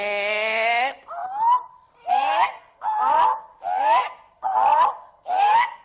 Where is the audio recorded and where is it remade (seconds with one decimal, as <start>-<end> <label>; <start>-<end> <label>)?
0.0-5.8 recorded